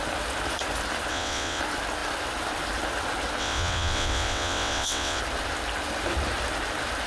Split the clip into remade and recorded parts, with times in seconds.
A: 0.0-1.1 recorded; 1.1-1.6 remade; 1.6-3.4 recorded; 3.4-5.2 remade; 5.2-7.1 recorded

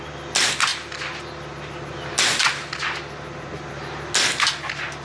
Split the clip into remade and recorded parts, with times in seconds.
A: 0.0-5.0 recorded

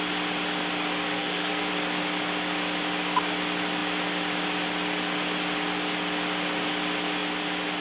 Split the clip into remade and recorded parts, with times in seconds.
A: 0.0-1.1 recorded; 1.1-1.7 remade; 1.7-7.8 recorded

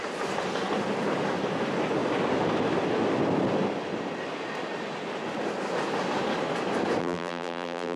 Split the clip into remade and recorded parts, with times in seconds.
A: 0.0-7.0 recorded; 7.0-8.0 remade